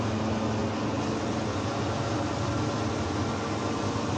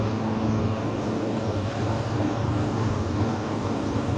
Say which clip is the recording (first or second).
first